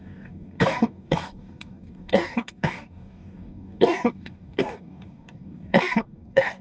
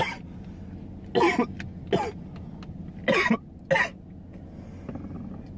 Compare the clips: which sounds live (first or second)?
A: second